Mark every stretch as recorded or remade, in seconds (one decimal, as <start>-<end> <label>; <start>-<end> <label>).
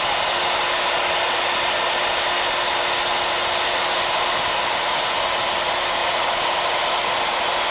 0.0-6.0 recorded; 6.0-6.6 remade; 6.6-7.7 recorded